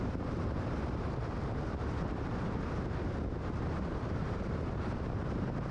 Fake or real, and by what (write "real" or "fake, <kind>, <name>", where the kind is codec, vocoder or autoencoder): fake, vocoder, BigVGAN v2